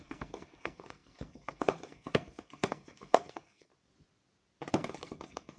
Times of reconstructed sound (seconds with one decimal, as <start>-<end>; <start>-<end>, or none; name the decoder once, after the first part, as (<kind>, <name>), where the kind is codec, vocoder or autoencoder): 0.0-3.7 (codec, SNAC); 4.7-5.6